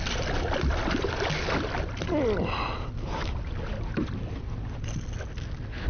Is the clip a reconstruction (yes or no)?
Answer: no